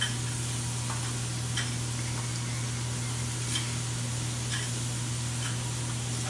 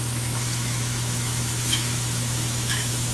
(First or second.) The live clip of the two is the first